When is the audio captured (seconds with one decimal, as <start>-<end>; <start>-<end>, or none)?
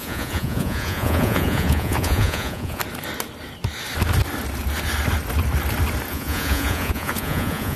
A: 2.8-6.1